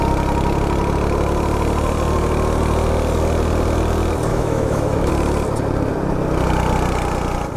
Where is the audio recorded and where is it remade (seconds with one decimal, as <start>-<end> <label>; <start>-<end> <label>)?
0.0-4.3 recorded; 4.3-5.1 remade; 5.1-7.6 recorded